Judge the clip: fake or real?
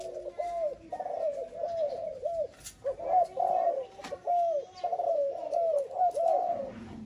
real